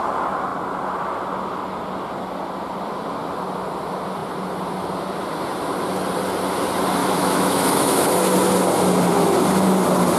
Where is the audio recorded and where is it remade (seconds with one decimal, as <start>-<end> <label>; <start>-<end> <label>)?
0.0-7.0 recorded; 7.0-8.1 remade; 8.1-10.2 recorded